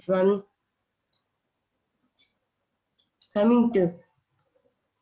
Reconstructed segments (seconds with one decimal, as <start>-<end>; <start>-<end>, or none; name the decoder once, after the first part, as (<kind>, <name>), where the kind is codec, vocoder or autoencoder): none